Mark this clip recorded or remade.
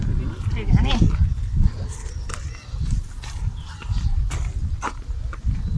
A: recorded